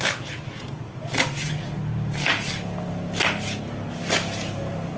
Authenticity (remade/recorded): recorded